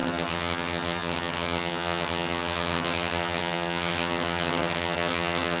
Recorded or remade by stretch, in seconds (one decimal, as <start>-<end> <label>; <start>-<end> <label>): 0.0-5.6 remade